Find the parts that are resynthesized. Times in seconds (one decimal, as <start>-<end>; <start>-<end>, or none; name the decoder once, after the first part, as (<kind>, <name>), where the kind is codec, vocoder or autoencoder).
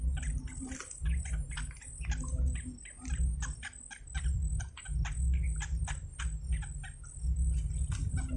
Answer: none